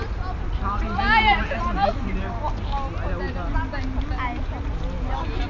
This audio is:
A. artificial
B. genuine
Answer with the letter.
B